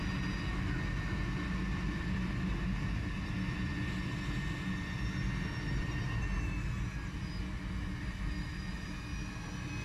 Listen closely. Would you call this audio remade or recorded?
recorded